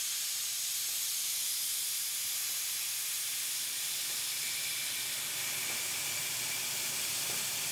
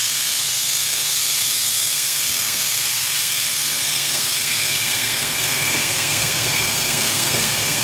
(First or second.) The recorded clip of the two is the first